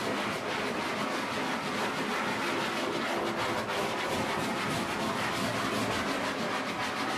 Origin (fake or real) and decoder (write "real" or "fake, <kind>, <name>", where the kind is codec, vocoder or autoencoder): real